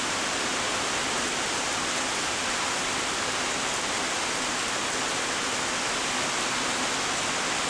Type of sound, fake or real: real